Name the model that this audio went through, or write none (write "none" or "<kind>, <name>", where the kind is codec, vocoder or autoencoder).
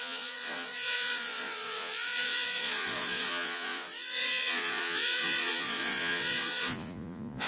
vocoder, Vocos